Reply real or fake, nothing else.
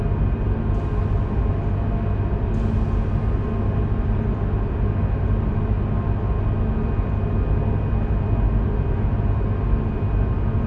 real